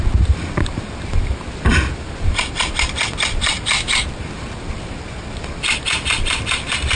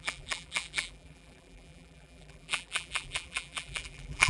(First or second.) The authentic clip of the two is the first